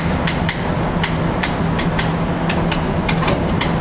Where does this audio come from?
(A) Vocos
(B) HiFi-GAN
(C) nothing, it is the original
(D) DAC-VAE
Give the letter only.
C